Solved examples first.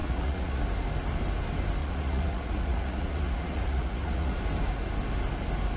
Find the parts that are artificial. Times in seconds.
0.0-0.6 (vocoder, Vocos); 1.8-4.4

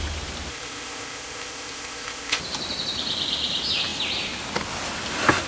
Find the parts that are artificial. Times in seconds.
0.5-2.4 (codec, ZipCodec)